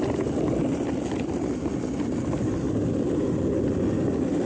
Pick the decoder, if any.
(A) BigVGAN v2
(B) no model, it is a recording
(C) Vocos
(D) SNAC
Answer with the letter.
B